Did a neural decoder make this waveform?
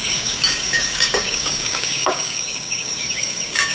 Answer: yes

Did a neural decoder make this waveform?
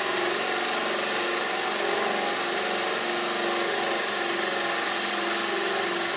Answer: no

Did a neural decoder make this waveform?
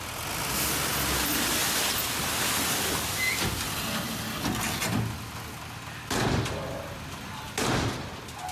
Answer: no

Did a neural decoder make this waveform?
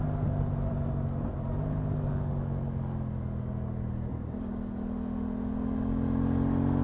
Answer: no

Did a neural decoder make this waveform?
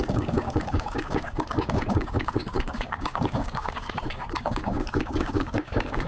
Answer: yes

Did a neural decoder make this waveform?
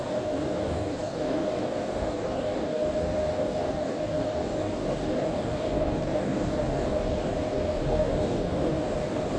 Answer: yes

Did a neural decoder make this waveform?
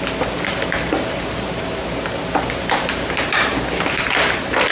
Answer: no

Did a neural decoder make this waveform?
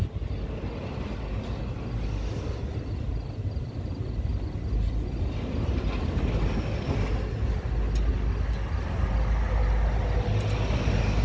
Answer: no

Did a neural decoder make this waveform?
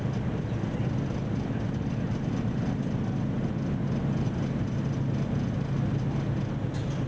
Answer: no